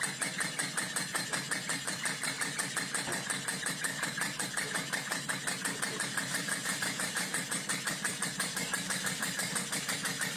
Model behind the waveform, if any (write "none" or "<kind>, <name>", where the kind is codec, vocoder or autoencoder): vocoder, BigVGAN v2